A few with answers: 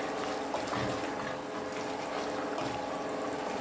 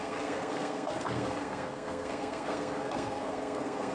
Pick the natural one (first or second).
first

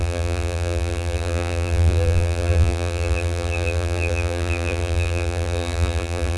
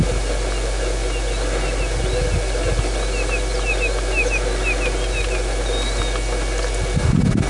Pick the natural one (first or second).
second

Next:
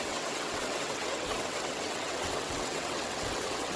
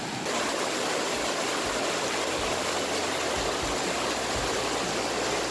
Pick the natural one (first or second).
second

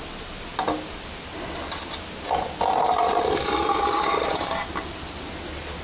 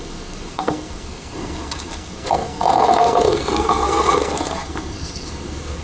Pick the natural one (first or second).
first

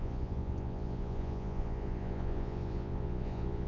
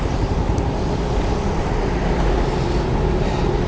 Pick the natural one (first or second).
second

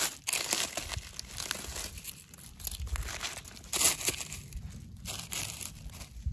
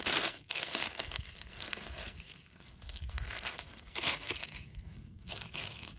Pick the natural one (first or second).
first